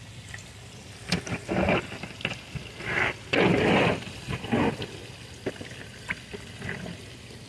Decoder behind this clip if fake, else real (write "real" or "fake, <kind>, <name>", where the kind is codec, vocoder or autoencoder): real